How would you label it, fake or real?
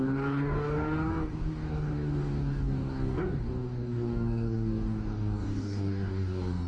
fake